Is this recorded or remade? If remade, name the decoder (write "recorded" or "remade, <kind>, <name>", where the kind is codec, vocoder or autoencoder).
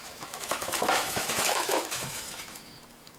remade, autoencoder, DAC-VAE